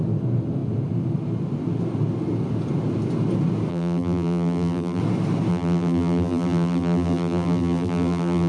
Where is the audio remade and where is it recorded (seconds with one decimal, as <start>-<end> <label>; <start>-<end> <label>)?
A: 0.0-3.7 recorded; 3.7-5.0 remade; 5.0-5.5 recorded; 5.5-8.5 remade

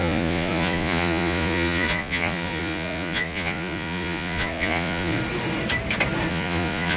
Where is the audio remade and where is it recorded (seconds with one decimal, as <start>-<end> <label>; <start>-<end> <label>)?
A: 0.0-5.2 remade; 5.2-6.3 recorded; 6.3-7.0 remade

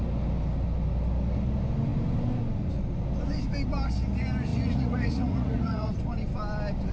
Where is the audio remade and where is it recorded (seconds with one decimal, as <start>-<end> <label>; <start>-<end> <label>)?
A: 0.0-4.5 recorded; 4.5-5.9 remade; 5.9-6.9 recorded

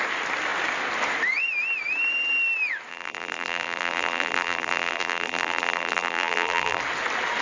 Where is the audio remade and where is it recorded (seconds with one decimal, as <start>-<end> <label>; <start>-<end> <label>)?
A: 0.0-2.9 recorded; 2.9-6.8 remade; 6.8-7.4 recorded

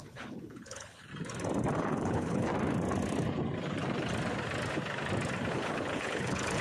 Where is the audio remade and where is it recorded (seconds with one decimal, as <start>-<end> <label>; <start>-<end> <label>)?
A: 0.0-1.1 remade; 1.1-1.7 recorded; 1.7-2.5 remade; 2.5-5.5 recorded; 5.5-6.6 remade

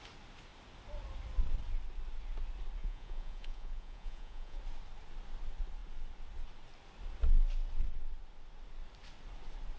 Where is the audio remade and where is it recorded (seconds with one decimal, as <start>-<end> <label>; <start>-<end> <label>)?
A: 0.0-2.8 recorded; 2.8-4.6 remade; 4.6-9.8 recorded

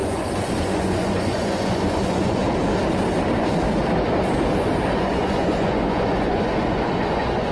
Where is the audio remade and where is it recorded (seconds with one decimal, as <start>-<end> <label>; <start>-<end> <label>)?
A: 0.0-2.4 remade; 2.4-5.0 recorded; 5.0-7.5 remade